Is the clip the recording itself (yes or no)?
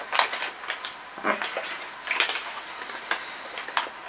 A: yes